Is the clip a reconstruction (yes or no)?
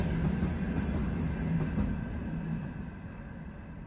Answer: no